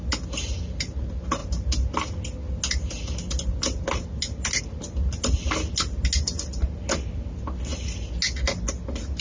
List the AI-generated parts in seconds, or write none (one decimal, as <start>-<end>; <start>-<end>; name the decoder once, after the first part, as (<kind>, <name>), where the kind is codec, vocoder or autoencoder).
none